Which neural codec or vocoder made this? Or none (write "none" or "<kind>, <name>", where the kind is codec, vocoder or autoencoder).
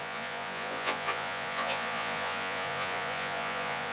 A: vocoder, Vocos